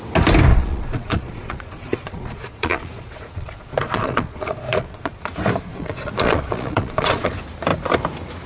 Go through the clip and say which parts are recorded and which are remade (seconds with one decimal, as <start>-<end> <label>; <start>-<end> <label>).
0.0-0.5 recorded; 0.5-5.2 remade; 5.2-5.7 recorded; 5.7-7.3 remade; 7.3-8.5 recorded